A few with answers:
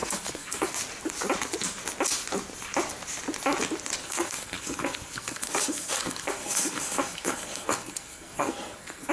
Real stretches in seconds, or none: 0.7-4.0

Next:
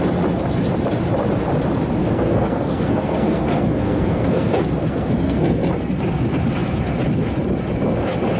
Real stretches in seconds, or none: 0.0-2.0; 5.7-8.4

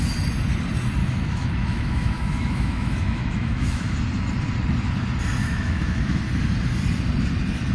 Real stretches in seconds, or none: 0.0-1.0; 3.9-5.4; 6.2-7.7

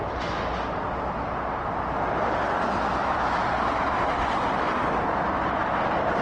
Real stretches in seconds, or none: 0.0-6.2

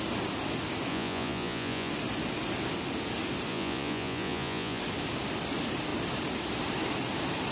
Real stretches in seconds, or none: 0.0-0.9; 1.9-3.5; 4.8-7.5

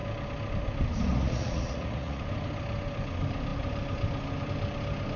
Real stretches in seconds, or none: 0.0-1.1; 2.2-5.2

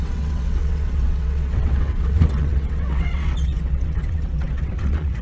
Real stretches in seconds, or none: none

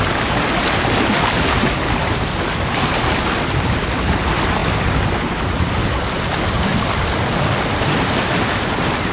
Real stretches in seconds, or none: 0.0-9.1